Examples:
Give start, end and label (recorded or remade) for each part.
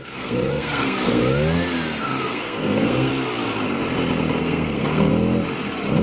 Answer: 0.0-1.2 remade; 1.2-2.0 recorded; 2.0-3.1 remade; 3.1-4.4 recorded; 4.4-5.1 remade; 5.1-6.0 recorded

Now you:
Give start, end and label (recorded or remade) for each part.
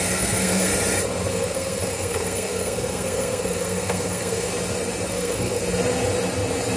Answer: 0.0-0.7 remade; 0.7-1.3 recorded; 1.3-4.5 remade; 4.5-5.1 recorded; 5.1-5.6 remade; 5.6-6.8 recorded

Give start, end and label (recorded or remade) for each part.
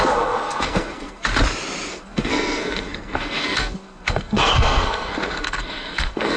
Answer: 0.0-1.3 remade; 1.3-1.9 recorded; 1.9-6.4 remade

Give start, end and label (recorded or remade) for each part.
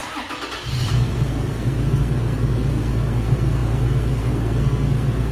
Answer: 0.0-0.9 recorded; 0.9-5.3 remade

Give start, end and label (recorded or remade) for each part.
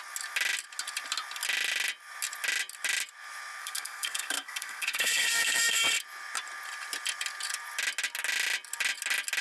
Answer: 0.0-3.6 recorded; 3.6-5.8 remade; 5.8-9.4 recorded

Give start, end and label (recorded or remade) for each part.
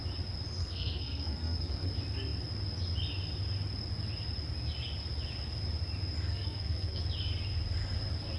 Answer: 0.0-0.6 recorded; 0.6-1.9 remade; 1.9-6.3 recorded; 6.3-7.0 remade; 7.0-8.4 recorded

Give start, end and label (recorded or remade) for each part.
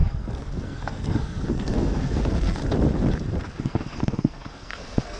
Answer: 0.0-2.6 remade; 2.6-3.6 recorded; 3.6-5.2 remade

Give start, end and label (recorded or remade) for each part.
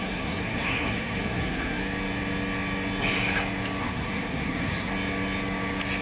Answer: 0.0-1.8 remade; 1.8-3.8 recorded; 3.8-4.9 remade; 4.9-6.0 recorded